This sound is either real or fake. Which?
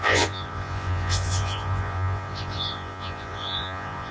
fake